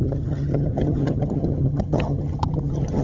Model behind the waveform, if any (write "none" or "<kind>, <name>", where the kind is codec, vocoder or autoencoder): vocoder, HiFi-GAN